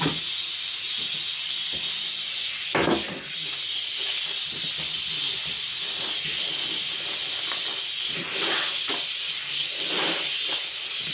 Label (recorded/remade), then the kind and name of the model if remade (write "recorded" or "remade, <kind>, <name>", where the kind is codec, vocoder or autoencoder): recorded